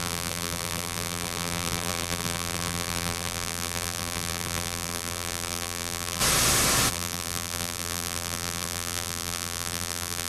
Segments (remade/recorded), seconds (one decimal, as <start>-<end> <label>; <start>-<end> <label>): 0.0-6.2 remade; 6.2-6.9 recorded; 6.9-10.3 remade

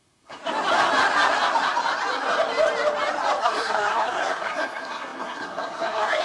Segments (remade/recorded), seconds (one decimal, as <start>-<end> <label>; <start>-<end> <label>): 0.0-0.4 remade; 0.4-3.4 recorded; 3.4-6.2 remade

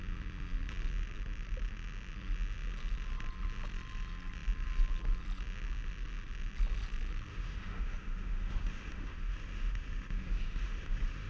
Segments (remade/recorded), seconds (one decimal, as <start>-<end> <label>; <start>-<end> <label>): 0.0-7.3 recorded; 7.3-11.3 remade

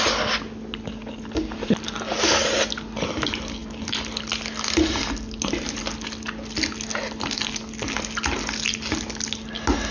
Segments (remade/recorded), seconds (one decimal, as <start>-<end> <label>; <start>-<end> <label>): 0.0-9.9 recorded

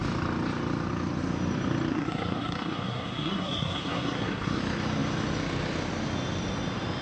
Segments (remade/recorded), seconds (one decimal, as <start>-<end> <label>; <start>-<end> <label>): 0.0-1.9 recorded; 1.9-4.6 remade; 4.6-7.0 recorded

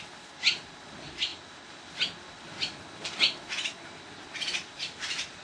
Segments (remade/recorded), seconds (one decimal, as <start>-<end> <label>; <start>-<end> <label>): 0.0-5.4 recorded